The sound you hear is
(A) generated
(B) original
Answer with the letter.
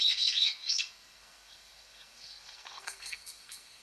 A